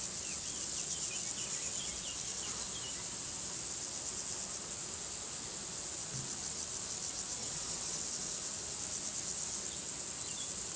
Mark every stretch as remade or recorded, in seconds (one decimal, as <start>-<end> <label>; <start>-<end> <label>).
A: 0.0-7.4 recorded; 7.4-8.0 remade; 8.0-10.8 recorded